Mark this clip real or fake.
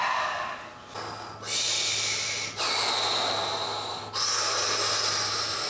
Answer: real